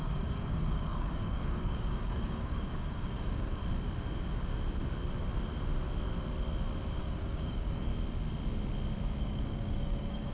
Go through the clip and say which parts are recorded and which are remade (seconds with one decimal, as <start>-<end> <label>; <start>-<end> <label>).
0.0-3.6 remade; 3.6-7.0 recorded; 7.0-7.9 remade; 7.9-9.2 recorded; 9.2-10.3 remade